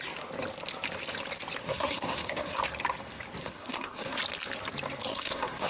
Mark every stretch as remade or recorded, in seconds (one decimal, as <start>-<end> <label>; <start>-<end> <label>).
0.0-1.6 recorded; 1.6-2.6 remade; 2.6-3.4 recorded; 3.4-4.2 remade; 4.2-5.1 recorded; 5.1-5.7 remade